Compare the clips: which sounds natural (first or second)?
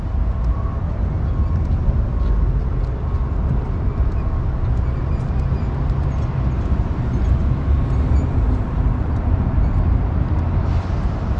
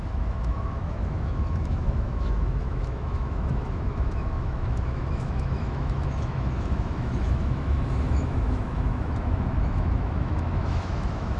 first